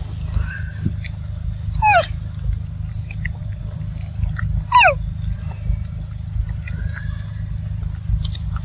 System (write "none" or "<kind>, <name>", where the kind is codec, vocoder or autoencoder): none